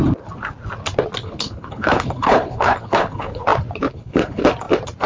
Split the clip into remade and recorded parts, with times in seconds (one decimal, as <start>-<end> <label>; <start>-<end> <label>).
0.0-1.2 recorded; 1.2-3.4 remade; 3.4-3.9 recorded; 3.9-4.4 remade; 4.4-5.1 recorded